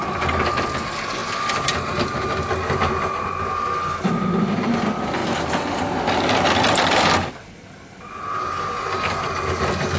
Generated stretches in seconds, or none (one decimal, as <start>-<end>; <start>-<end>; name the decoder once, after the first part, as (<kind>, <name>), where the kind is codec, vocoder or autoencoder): none